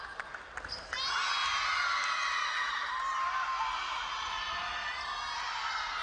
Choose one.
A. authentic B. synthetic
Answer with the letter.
A